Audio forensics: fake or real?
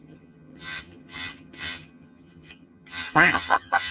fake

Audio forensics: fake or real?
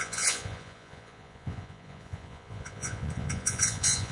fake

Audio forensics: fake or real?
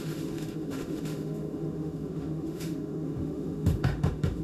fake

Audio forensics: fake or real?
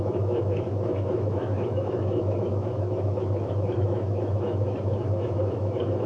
fake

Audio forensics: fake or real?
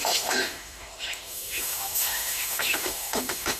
fake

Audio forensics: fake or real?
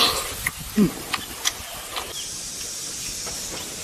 real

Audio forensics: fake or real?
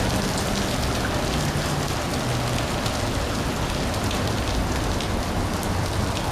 real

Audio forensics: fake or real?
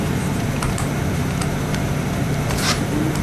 fake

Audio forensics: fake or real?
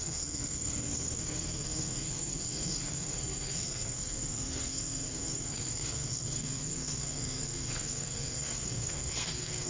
fake